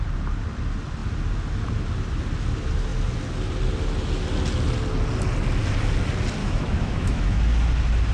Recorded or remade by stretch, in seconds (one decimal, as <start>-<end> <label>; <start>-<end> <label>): 0.0-6.4 recorded; 6.4-7.4 remade; 7.4-8.1 recorded